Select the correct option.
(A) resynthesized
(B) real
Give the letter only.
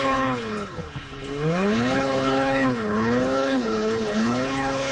A